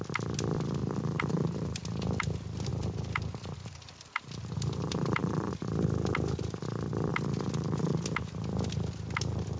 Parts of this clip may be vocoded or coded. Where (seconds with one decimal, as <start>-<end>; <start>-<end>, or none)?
0.8-2.3; 2.7-5.5